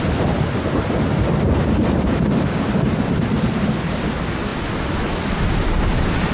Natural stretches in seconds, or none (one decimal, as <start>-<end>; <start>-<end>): 0.0-6.3